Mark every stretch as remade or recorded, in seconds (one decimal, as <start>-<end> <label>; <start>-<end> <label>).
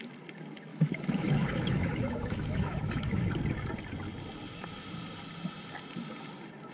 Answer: 0.0-0.7 recorded; 0.7-3.3 remade; 3.3-6.7 recorded